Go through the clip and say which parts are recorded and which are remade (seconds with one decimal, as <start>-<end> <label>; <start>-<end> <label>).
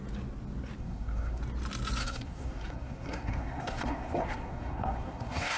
0.0-0.8 recorded; 0.8-1.4 remade; 1.4-2.0 recorded; 2.0-5.6 remade